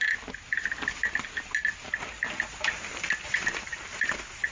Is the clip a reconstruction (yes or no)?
no